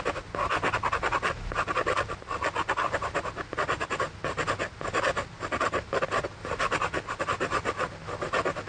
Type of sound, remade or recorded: recorded